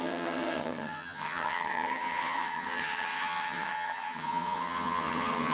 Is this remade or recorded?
remade